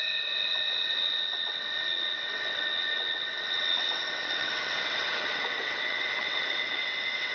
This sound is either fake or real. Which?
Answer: fake